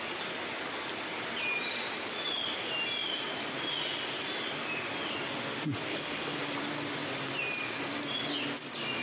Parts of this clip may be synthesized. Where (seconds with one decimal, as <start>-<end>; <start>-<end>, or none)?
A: 5.9-6.4